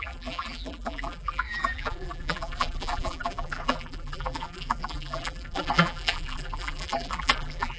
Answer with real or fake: fake